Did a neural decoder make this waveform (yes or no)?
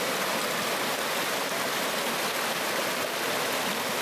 no